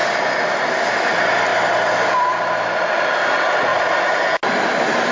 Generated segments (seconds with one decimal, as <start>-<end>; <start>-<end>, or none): none